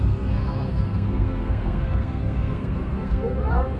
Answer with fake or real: fake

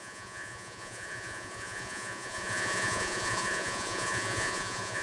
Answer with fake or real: fake